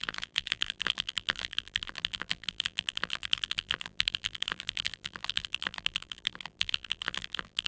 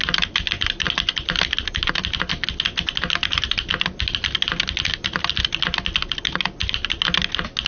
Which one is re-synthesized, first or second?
first